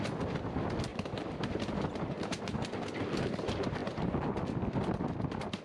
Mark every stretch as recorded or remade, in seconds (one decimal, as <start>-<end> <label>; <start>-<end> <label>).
0.0-0.9 recorded; 0.9-2.4 remade; 2.4-5.6 recorded